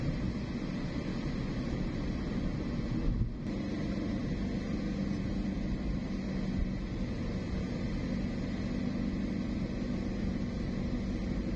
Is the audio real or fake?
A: real